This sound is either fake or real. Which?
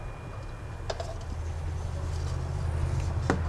real